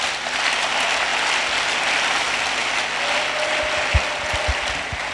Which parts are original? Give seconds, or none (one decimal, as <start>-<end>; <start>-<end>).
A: 0.0-5.1